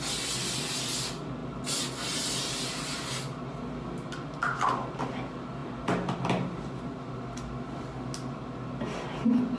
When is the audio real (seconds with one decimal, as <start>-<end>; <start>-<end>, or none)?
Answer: 0.0-5.6; 6.7-9.6